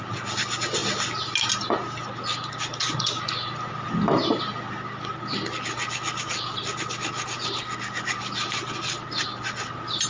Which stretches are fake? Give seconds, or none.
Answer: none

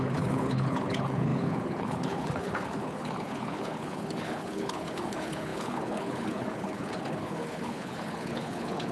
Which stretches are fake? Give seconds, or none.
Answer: 0.0-8.9 (codec, HILCodec)

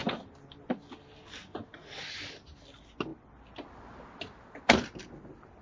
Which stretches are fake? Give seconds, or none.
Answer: none

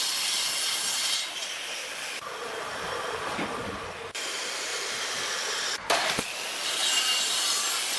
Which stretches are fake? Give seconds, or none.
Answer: 4.7-6.2 (vocoder, BigVGAN v2); 6.8-7.4